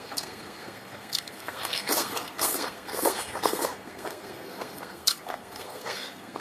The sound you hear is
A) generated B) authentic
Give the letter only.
A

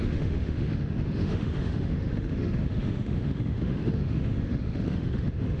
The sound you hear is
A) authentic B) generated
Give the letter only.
B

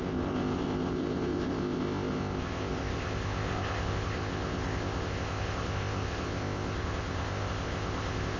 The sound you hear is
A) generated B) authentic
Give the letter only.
A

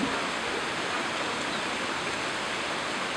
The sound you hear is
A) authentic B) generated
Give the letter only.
A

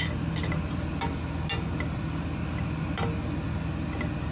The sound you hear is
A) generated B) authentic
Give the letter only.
B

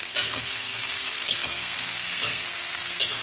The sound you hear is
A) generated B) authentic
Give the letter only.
A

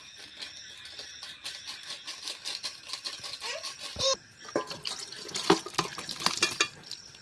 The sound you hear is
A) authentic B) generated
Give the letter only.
A